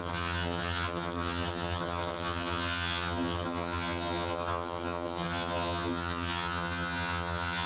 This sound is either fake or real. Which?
fake